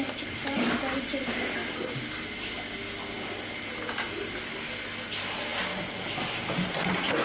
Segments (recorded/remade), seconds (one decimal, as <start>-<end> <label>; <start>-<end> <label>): 0.0-7.2 recorded